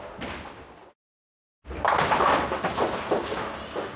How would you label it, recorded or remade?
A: recorded